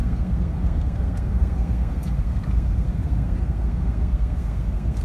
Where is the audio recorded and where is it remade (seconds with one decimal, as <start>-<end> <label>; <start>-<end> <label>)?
0.0-5.0 remade